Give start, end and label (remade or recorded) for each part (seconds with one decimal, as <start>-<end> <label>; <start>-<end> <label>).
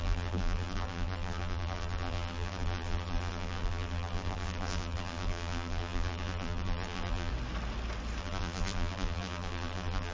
0.0-7.3 remade; 7.3-8.2 recorded; 8.2-10.1 remade